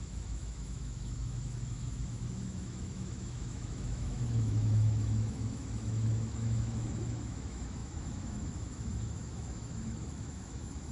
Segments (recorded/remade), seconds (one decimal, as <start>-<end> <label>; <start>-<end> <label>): 0.0-10.9 remade